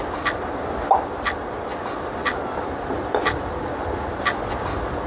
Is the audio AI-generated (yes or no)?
no